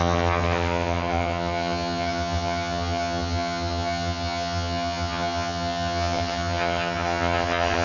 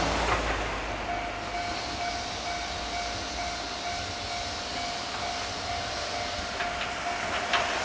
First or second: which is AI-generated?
first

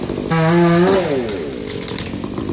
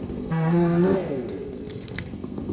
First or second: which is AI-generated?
second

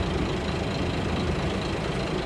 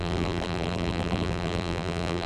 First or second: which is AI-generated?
second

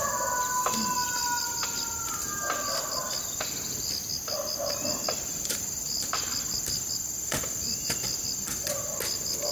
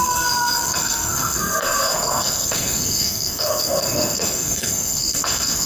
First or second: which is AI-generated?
second